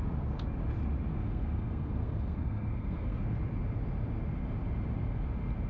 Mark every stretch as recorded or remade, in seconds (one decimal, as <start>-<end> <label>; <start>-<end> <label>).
0.0-1.1 recorded; 1.1-3.2 remade; 3.2-5.7 recorded